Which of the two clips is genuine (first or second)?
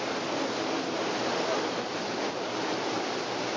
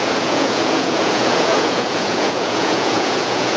first